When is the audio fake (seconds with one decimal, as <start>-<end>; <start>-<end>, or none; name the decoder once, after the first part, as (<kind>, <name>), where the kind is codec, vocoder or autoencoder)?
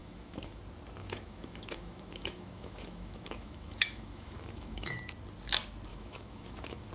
0.0-0.6 (autoencoder, DAC-VAE); 1.0-5.1; 5.9-6.9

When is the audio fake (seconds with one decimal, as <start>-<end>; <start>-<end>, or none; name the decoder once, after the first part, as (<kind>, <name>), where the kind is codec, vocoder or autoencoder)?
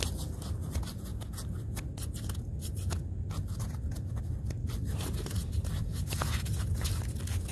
none